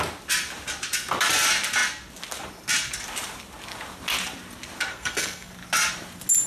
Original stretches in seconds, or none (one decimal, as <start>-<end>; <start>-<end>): 0.0-4.9; 5.5-6.5